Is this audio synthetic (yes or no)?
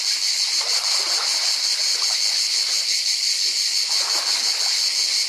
no